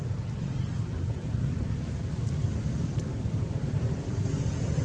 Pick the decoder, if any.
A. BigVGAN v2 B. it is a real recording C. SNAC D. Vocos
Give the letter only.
A